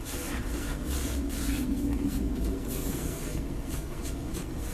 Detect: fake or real fake